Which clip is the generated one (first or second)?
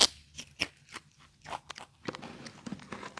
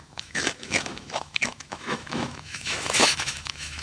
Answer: second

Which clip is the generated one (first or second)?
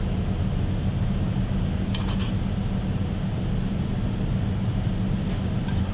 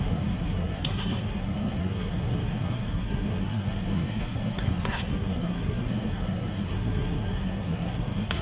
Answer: second